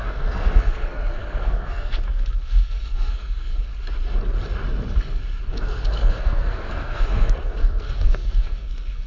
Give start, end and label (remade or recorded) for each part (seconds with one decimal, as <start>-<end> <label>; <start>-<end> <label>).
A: 0.0-3.7 remade; 3.7-5.5 recorded; 5.5-9.1 remade